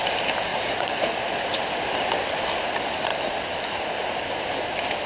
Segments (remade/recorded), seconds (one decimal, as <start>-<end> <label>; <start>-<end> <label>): 0.0-0.5 recorded; 0.5-1.6 remade; 1.6-5.1 recorded